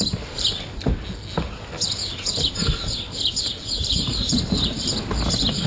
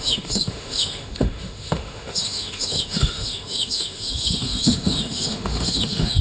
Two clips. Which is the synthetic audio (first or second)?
second